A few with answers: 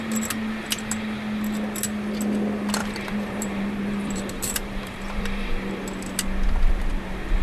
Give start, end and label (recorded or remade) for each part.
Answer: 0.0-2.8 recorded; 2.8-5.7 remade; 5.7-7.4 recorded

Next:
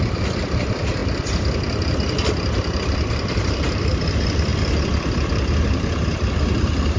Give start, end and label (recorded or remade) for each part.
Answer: 0.0-7.0 recorded

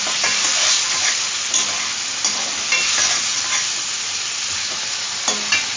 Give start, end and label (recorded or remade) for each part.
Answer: 0.0-4.6 recorded; 4.6-5.1 remade; 5.1-5.8 recorded

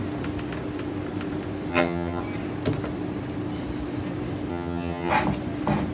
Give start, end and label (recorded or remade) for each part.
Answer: 0.0-1.7 recorded; 1.7-2.2 remade; 2.2-4.5 recorded; 4.5-5.1 remade; 5.1-5.9 recorded

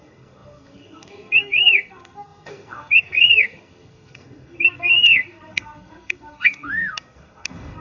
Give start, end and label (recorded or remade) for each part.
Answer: 0.0-7.8 remade

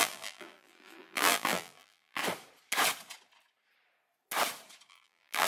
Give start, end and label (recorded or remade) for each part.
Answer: 0.0-2.2 remade; 2.2-4.9 recorded; 4.9-5.5 remade